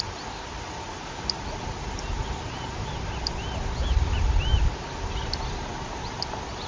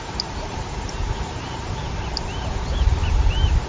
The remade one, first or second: second